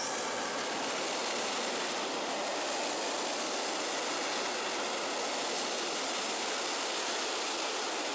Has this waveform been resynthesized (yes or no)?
no